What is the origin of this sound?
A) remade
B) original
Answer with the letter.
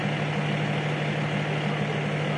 B